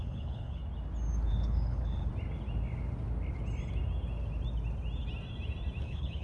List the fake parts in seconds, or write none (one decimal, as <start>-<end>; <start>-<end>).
0.0-0.6; 1.3-2.1; 5.8-6.2